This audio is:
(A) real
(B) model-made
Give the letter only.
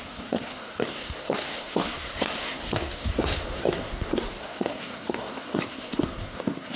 B